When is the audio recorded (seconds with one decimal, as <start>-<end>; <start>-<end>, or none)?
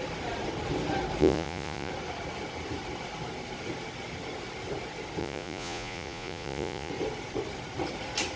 0.0-1.2; 1.9-5.2; 6.9-8.4